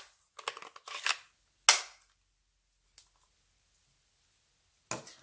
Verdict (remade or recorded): recorded